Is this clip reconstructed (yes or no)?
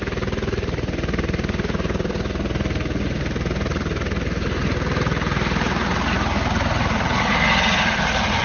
no